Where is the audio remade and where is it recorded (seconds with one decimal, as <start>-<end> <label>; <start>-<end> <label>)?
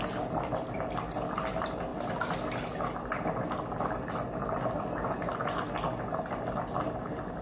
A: 0.0-7.4 recorded